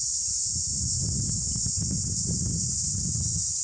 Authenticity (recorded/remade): recorded